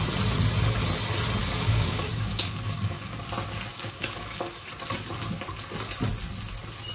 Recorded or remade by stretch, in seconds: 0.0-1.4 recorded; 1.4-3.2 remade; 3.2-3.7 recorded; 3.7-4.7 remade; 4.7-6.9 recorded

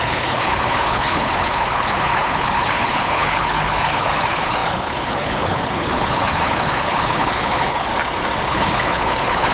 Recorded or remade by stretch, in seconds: 0.0-7.9 remade; 7.9-8.5 recorded; 8.5-9.5 remade

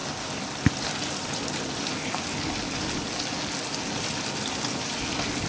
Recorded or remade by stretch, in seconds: 0.0-5.5 recorded

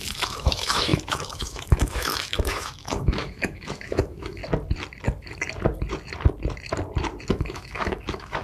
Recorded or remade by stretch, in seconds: 0.0-4.4 remade; 4.4-7.3 recorded; 7.3-8.4 remade

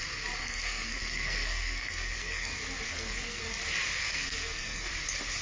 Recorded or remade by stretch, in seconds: 0.0-0.4 recorded; 0.4-2.5 remade; 2.5-2.9 recorded; 2.9-3.5 remade; 3.5-4.0 recorded; 4.0-4.9 remade; 4.9-5.4 recorded